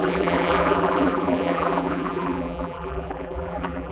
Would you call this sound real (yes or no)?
no